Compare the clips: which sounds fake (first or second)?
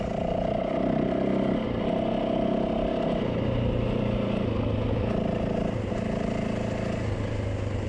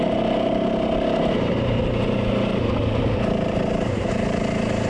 second